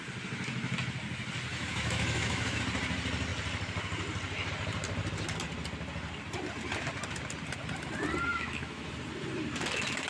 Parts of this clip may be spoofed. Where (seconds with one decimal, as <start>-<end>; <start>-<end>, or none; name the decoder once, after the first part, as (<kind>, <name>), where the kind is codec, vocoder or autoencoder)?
1.5-2.6 (autoencoder, DAC-VAE); 8.3-8.9